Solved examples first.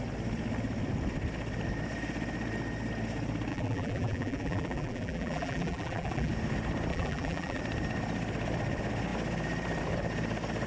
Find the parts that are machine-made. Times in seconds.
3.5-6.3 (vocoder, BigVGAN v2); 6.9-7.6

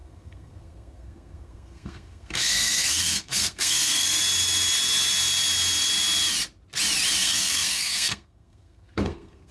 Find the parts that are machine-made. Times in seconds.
0.0-4.2 (codec, SNAC); 7.2-9.5